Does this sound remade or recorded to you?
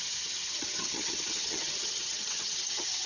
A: remade